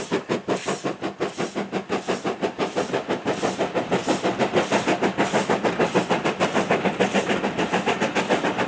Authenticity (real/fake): real